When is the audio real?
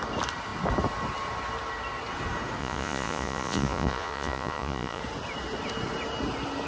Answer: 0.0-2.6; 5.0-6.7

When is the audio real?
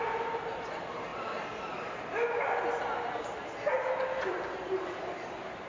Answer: 1.1-4.3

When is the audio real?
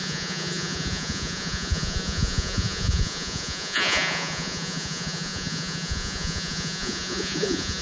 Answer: none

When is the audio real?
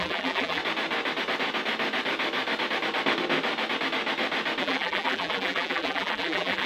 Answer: 0.6-4.6